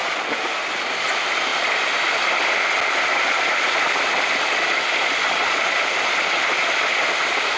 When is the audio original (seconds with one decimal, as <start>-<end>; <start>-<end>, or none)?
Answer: 0.0-1.5; 5.2-7.6